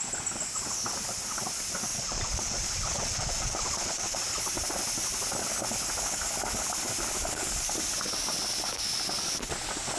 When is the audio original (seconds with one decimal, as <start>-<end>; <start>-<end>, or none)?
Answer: 0.0-1.9; 4.4-10.0